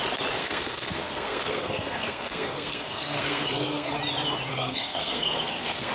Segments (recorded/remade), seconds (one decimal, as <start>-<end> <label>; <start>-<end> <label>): 0.0-0.4 recorded; 0.4-3.9 remade; 3.9-4.5 recorded; 4.5-5.9 remade